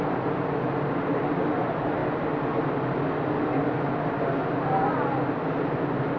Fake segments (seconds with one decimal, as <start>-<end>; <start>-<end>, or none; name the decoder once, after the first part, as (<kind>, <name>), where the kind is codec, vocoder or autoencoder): none